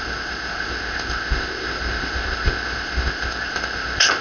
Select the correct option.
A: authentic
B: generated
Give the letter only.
B